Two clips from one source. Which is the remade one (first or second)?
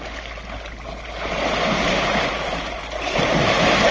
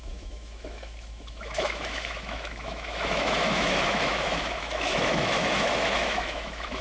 second